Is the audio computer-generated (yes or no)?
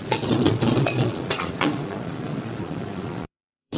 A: yes